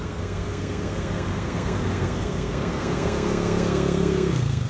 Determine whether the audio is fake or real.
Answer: fake